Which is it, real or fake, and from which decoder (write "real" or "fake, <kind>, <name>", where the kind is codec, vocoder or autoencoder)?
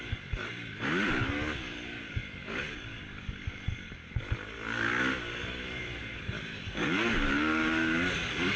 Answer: fake, codec, DAC